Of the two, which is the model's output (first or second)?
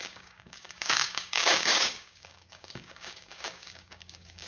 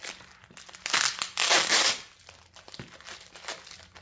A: first